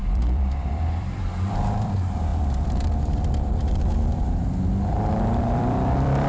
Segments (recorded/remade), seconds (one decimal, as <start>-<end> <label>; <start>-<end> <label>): 0.0-1.9 remade; 1.9-2.3 recorded; 2.3-6.3 remade